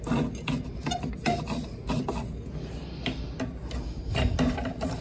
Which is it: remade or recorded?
recorded